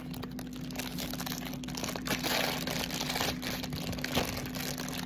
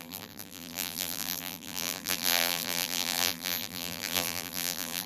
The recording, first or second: first